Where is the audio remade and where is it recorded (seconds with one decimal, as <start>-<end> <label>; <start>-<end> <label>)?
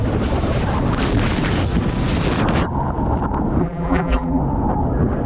0.0-3.6 recorded; 3.6-4.4 remade; 4.4-5.3 recorded